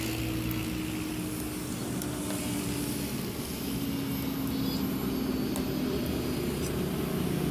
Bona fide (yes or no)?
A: yes